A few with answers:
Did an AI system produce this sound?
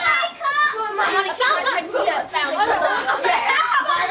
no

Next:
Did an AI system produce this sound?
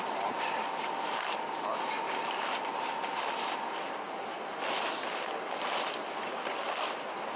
no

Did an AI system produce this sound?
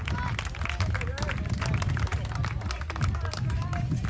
no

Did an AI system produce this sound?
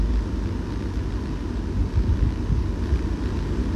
no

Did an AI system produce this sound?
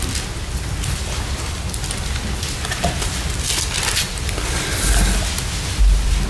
no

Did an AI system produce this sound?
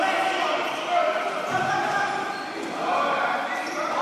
no